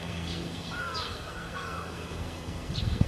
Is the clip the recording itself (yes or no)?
no